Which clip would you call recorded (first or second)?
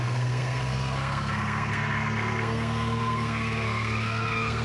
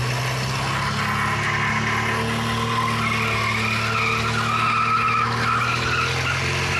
second